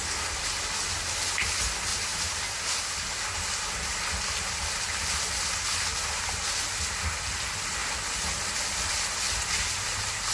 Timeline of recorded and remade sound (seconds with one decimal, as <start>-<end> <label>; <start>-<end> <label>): 0.0-1.9 recorded; 1.9-2.8 remade; 2.8-10.3 recorded